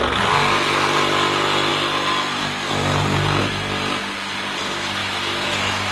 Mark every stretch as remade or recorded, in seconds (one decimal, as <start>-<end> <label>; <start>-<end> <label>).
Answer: 0.0-5.0 recorded; 5.0-5.9 remade